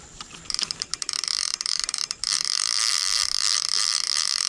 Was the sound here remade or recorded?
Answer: remade